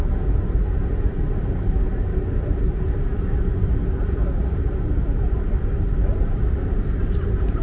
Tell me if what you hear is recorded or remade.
recorded